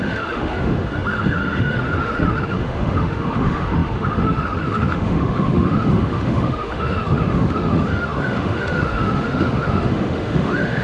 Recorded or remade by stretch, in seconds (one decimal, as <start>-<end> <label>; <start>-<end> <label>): 0.0-10.8 remade